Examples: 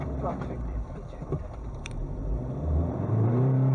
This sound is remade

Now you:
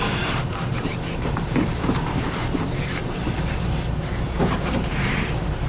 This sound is remade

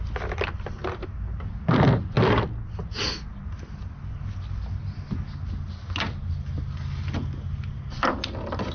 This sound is recorded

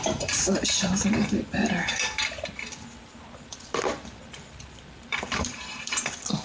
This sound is remade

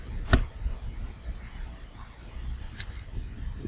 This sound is recorded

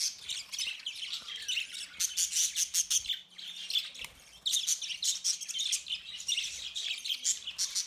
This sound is recorded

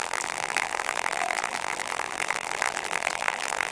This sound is remade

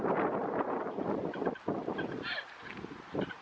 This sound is recorded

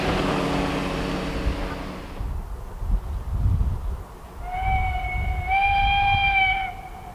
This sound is recorded